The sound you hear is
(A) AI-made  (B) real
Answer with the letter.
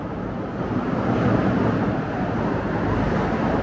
B